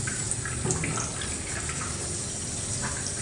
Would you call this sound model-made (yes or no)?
no